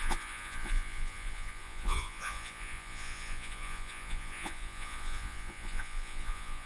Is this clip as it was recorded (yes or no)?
no